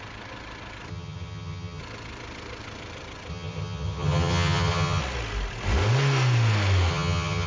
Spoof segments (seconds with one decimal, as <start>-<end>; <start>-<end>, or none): 0.9-1.8; 3.3-5.0; 6.9-7.5